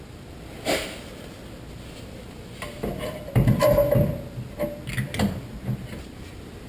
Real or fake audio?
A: real